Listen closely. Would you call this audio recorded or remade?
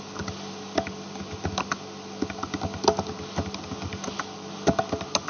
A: recorded